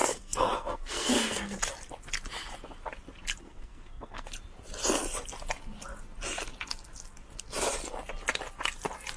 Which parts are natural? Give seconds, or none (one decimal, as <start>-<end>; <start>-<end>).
1.6-3.4; 4.3-9.2